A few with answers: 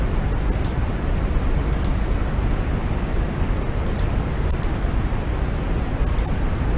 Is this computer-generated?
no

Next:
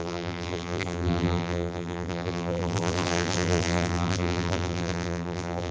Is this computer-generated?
yes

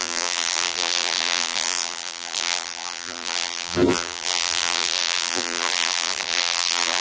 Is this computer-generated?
yes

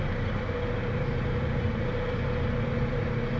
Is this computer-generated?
yes